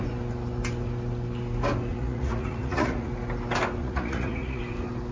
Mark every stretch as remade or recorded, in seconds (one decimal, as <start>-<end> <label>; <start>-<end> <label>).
0.0-1.9 recorded; 1.9-3.1 remade; 3.1-3.8 recorded; 3.8-4.6 remade; 4.6-5.1 recorded